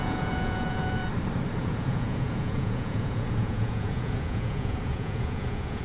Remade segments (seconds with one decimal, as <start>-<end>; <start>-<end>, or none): 0.0-1.0; 1.6-5.8